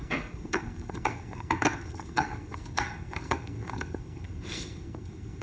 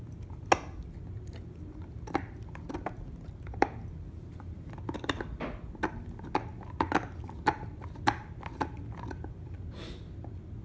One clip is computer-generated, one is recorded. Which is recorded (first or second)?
second